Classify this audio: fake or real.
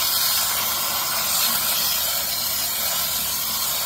real